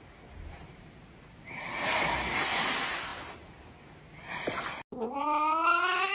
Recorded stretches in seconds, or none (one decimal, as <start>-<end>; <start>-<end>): 0.0-6.1